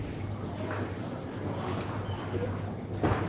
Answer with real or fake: real